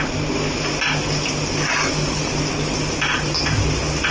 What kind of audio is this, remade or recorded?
recorded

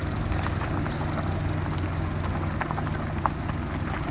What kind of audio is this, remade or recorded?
recorded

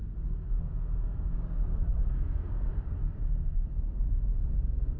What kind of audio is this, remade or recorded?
remade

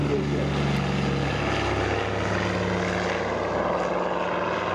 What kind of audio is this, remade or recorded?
recorded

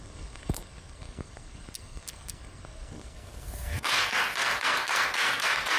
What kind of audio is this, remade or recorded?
remade